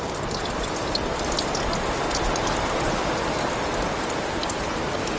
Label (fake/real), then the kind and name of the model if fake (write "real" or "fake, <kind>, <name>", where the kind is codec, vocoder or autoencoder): real